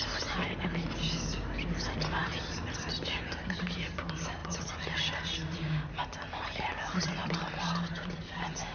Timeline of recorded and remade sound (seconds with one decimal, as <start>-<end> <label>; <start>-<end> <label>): 0.0-8.7 recorded